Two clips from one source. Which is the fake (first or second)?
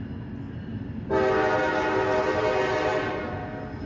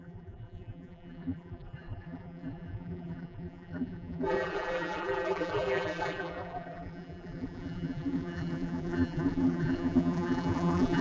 second